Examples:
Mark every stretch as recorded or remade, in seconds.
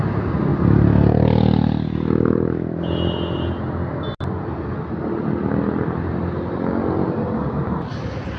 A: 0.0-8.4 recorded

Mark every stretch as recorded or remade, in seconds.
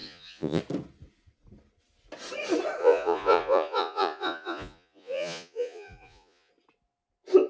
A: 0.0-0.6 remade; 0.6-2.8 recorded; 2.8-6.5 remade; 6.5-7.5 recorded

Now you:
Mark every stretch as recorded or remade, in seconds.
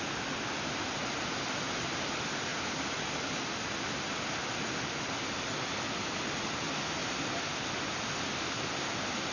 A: 0.0-9.3 recorded